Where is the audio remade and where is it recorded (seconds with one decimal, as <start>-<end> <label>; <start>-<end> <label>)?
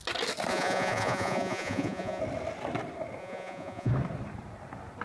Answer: 0.0-0.5 recorded; 0.5-2.2 remade; 2.2-3.2 recorded; 3.2-3.9 remade; 3.9-5.0 recorded